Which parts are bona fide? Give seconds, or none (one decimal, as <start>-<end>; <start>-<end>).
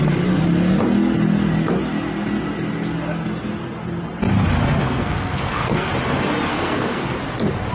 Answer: 0.0-4.8; 5.9-6.5; 7.2-7.7